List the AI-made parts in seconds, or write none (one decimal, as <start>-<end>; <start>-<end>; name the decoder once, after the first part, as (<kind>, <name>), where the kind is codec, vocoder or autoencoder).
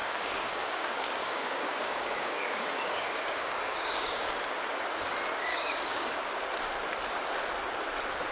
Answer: 0.0-4.3 (codec, DAC); 5.5-6.2